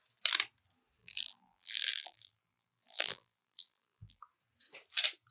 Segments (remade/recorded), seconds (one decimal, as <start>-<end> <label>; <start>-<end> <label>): 0.0-1.0 recorded; 1.0-4.2 remade; 4.2-5.3 recorded

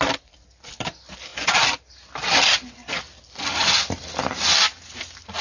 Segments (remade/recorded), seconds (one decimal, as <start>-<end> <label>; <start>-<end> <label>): 0.0-5.4 recorded